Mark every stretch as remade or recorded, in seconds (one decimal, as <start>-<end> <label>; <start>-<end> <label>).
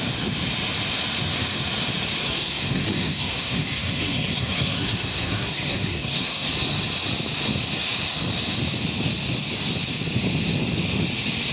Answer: 0.0-2.2 recorded; 2.2-6.5 remade; 6.5-11.5 recorded